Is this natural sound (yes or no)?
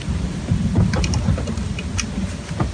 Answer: yes